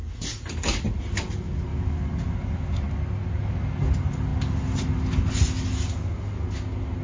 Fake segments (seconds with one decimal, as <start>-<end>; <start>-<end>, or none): none